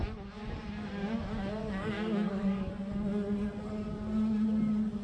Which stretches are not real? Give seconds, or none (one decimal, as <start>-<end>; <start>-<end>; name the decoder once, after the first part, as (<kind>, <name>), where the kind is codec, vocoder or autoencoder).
1.6-2.7 (codec, DAC)